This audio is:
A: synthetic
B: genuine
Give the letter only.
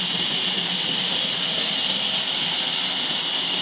B